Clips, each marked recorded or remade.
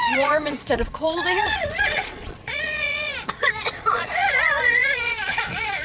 remade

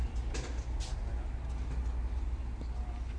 recorded